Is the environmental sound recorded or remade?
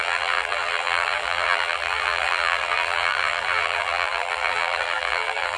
remade